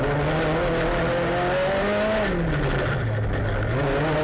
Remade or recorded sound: recorded